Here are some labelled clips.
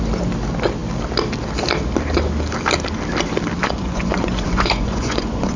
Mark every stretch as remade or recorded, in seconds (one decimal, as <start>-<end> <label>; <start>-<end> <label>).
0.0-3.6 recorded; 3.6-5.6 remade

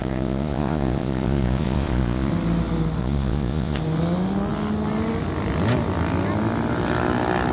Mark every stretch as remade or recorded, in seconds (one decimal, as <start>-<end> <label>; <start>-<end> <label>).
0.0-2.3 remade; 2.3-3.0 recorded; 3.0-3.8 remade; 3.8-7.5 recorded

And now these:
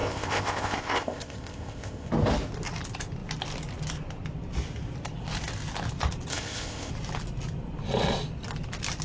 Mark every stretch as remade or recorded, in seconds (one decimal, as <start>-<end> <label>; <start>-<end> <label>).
0.0-2.1 remade; 2.1-6.3 recorded; 6.3-6.9 remade; 6.9-9.0 recorded